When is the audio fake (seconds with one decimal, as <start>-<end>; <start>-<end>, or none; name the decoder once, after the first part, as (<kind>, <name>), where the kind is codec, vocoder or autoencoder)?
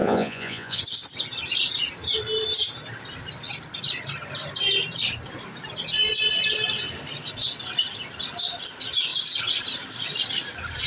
0.0-0.8 (vocoder, Vocos)